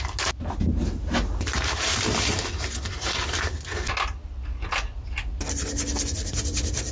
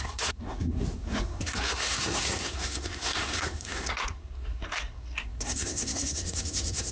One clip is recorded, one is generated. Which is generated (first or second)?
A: second